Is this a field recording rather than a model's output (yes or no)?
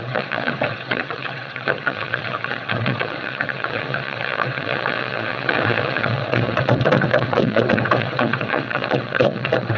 no